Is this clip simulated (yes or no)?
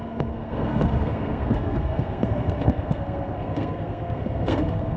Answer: yes